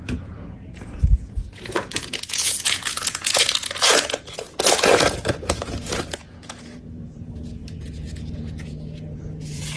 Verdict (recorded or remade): remade